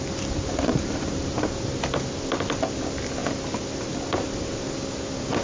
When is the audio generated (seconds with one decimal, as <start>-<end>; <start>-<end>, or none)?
none